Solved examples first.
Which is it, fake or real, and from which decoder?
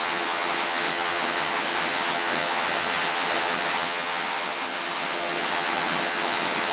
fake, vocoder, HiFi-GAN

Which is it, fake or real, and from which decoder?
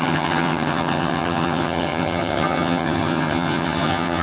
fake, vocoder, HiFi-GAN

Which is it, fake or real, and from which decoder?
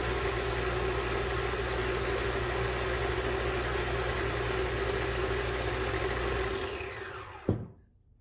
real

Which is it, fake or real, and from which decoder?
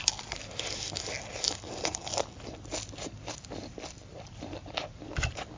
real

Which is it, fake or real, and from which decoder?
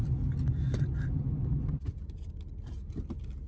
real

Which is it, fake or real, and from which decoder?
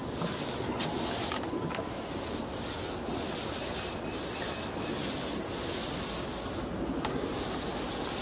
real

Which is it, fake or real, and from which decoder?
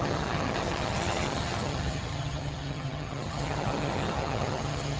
fake, vocoder, HiFi-GAN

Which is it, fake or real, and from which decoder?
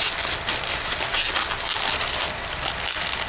real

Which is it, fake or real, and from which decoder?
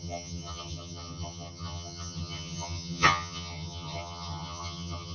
fake, vocoder, HiFi-GAN